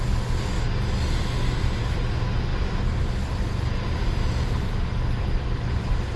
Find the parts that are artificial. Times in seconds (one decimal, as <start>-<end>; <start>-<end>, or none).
none

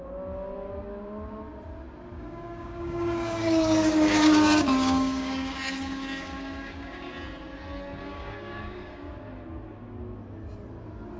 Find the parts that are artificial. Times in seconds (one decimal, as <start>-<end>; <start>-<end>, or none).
2.1-7.1; 8.0-9.0

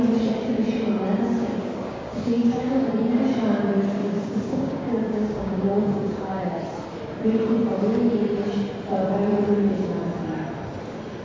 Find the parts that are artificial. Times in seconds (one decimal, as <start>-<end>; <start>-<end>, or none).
1.5-2.9; 4.0-6.6

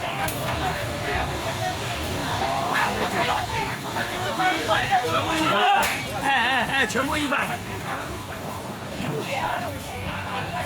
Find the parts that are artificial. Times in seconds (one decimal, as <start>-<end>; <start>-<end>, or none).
0.0-6.0; 6.9-10.7

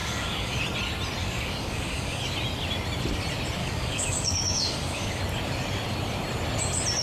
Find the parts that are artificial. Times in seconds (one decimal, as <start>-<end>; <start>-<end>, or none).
0.0-0.6; 1.2-2.2; 3.6-5.2

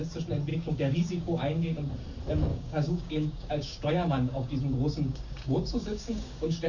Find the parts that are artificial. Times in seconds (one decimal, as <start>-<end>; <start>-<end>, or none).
0.5-1.9; 2.5-6.7

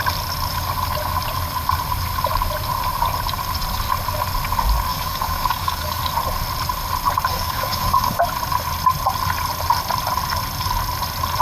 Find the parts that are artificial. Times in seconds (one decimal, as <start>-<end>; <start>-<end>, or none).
4.9-6.0; 7.3-8.2